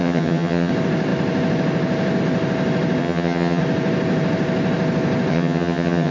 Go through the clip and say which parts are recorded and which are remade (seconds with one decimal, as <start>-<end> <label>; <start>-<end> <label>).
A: 0.0-0.7 remade; 0.7-3.0 recorded; 3.0-3.6 remade; 3.6-5.3 recorded; 5.3-6.1 remade